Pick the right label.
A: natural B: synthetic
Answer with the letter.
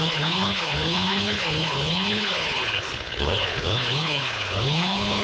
B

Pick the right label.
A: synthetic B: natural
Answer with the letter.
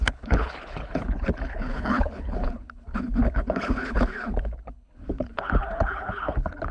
A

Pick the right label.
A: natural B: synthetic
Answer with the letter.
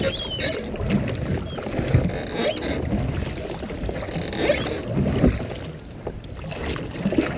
A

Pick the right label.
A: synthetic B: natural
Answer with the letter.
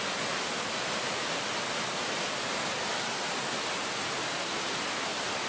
B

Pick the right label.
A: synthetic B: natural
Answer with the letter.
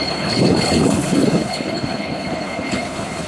A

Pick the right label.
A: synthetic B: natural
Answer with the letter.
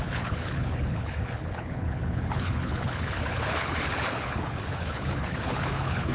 A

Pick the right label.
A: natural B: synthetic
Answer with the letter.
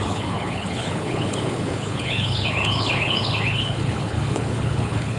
B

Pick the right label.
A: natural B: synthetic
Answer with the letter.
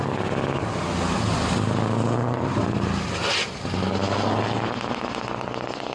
A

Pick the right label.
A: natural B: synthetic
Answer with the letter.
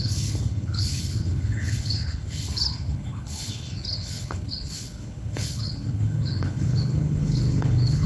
B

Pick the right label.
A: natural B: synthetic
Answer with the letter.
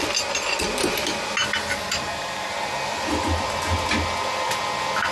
A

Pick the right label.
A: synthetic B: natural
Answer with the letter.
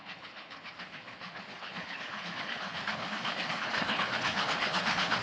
A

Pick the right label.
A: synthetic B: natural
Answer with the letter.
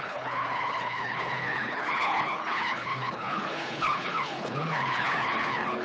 A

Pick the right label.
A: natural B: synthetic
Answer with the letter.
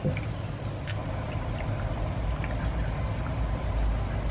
A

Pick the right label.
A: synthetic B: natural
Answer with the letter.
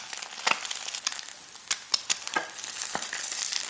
B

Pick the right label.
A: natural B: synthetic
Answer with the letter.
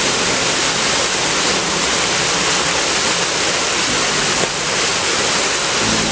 A